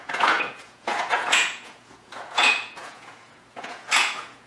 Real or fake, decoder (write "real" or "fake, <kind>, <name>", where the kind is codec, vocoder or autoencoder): fake, vocoder, Vocos